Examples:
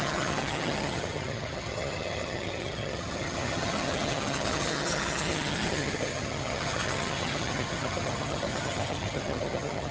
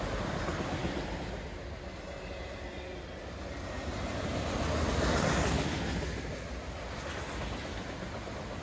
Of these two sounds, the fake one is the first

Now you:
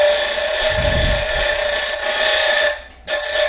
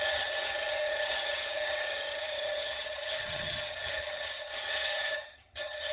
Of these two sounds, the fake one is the second